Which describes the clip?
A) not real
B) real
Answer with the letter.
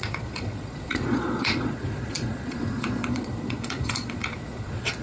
A